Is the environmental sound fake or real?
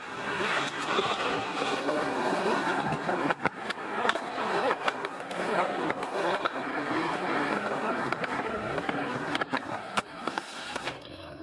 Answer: fake